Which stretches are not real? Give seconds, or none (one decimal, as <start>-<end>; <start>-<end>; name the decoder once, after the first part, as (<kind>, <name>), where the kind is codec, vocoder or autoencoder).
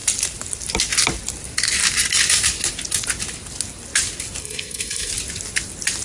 4.4-5.1 (codec, SNAC)